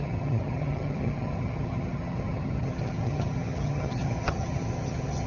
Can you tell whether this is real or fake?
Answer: fake